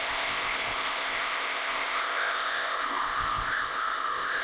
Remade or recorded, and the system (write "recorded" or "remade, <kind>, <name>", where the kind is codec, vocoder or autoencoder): remade, codec, ZipCodec